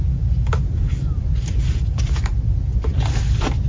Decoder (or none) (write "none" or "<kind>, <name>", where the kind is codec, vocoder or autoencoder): none